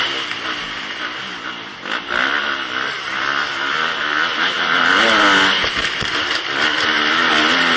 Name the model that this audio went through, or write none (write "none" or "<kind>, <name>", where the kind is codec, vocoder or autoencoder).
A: none